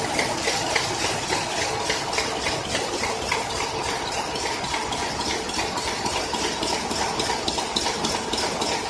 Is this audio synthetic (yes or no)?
no